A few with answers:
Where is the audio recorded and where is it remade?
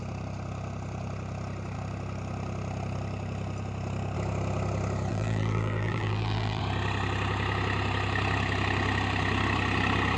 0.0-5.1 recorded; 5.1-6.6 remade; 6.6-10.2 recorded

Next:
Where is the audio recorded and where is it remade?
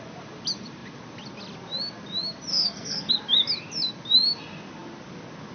0.0-2.5 recorded; 2.5-3.1 remade; 3.1-5.5 recorded